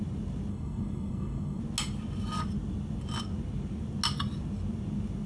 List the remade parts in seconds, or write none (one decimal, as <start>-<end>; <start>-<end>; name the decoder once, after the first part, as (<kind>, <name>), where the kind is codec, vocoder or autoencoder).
0.5-1.6 (codec, SNAC)